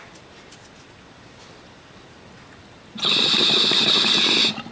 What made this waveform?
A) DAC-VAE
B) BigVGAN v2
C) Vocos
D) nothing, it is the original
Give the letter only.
D